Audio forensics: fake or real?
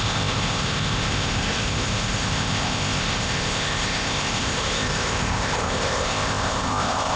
fake